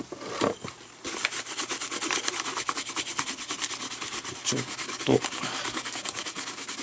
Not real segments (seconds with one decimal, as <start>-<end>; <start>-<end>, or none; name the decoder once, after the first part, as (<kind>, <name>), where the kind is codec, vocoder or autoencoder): 4.8-6.8 (codec, DAC)